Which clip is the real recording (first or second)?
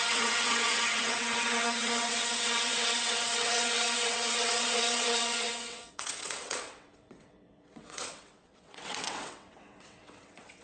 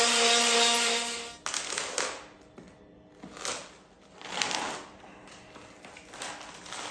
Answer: second